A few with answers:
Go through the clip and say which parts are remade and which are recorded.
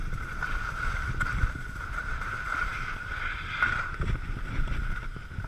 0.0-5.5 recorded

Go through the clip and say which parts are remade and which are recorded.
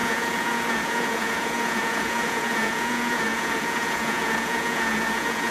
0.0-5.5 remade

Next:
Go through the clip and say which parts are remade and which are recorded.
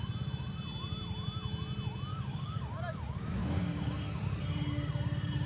0.0-2.1 recorded; 2.1-2.7 remade; 2.7-3.4 recorded; 3.4-4.0 remade; 4.0-5.5 recorded